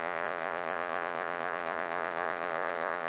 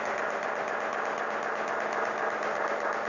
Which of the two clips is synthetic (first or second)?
first